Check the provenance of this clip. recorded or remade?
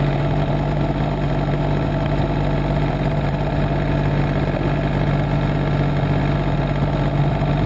recorded